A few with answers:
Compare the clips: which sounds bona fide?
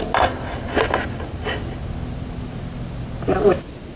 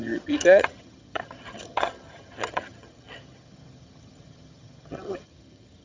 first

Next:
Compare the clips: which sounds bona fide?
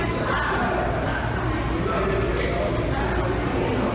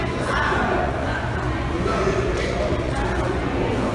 first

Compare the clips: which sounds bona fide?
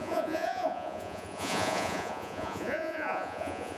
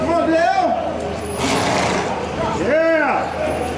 second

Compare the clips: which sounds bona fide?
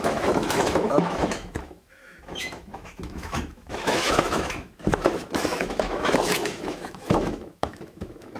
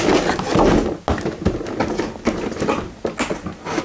second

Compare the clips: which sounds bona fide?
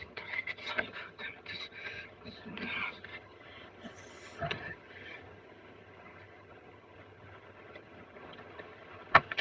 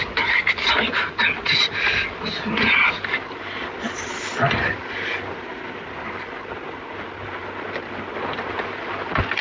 second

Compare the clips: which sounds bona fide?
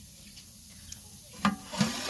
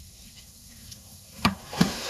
first